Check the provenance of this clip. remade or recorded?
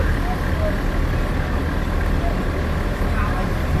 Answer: recorded